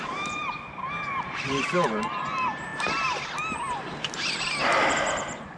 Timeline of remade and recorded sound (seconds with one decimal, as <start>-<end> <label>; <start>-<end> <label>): 0.0-2.7 remade; 2.7-4.9 recorded; 4.9-5.6 remade